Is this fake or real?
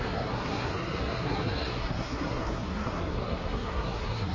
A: fake